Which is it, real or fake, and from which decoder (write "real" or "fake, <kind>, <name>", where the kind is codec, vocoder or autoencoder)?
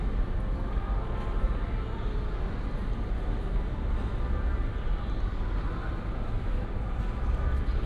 real